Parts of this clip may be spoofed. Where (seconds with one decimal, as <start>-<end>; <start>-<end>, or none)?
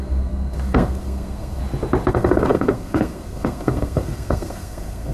0.0-1.6; 2.1-5.1